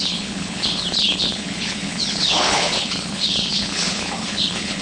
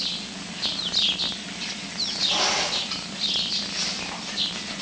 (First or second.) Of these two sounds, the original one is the second